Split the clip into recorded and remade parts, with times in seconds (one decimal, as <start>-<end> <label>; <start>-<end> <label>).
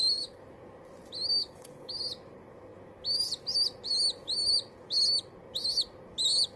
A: 0.0-1.4 recorded; 1.4-1.9 remade; 1.9-6.6 recorded